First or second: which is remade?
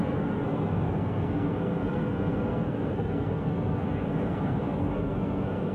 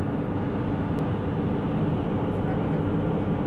first